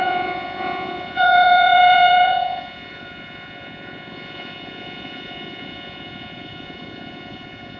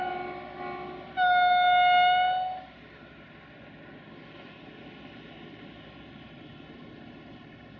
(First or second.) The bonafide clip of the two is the second